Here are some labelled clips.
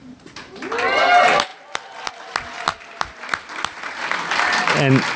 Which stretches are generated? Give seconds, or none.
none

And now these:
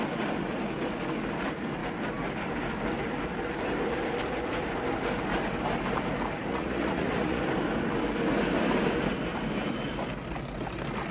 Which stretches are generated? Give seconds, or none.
6.5-7.4

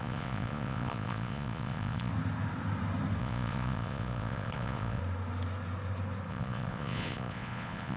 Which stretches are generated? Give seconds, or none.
0.0-2.1; 3.2-5.0; 6.3-8.0

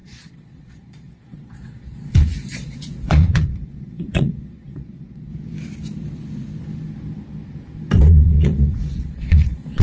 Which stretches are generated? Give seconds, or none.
0.0-5.3; 8.0-9.8

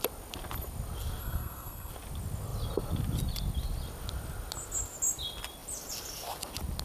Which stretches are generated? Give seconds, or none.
1.2-1.9